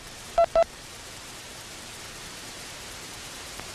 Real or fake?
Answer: fake